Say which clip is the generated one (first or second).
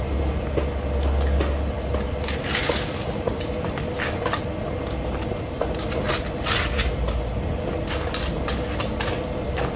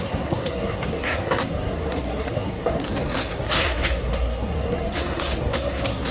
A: second